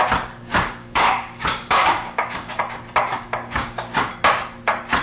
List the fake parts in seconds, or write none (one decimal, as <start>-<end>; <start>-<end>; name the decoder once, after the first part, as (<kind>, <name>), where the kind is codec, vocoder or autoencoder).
0.5-2.6 (codec, DAC); 3.1-4.1